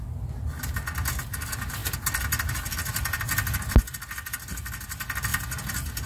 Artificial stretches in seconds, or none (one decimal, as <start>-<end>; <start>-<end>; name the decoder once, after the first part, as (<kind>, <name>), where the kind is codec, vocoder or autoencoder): none